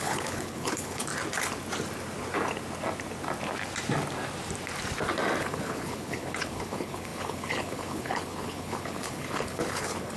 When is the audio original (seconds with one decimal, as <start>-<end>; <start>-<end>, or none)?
1.1-5.4